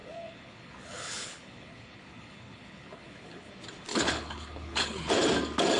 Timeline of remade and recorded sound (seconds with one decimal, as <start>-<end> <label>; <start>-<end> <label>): 0.0-3.5 remade; 3.5-3.9 recorded; 3.9-5.1 remade; 5.1-5.8 recorded